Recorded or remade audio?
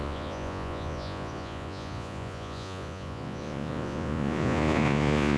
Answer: remade